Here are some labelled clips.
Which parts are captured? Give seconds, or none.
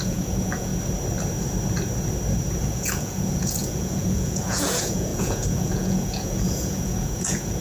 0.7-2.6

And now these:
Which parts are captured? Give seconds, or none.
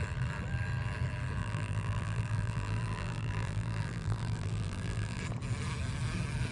0.0-1.4; 5.2-6.5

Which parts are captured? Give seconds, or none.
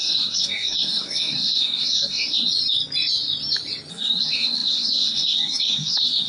2.5-3.9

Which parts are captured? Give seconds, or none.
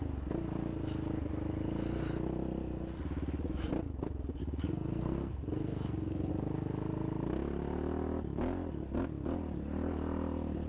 0.0-4.4; 6.3-10.7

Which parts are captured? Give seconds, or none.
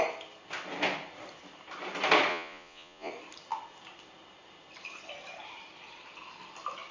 0.0-2.3; 3.1-6.9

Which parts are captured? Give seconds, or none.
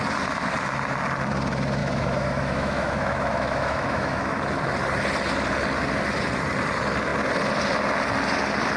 0.0-1.8; 4.4-8.8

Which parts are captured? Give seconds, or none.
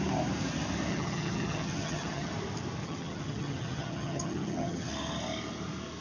0.0-0.9; 2.3-2.8; 4.9-6.0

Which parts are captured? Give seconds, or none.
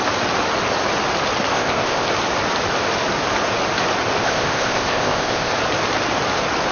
0.0-1.5; 2.1-4.2; 5.5-6.7